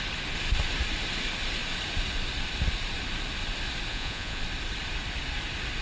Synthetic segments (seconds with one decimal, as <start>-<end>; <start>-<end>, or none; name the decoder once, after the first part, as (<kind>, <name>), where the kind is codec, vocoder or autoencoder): 3.9-4.4 (vocoder, Vocos)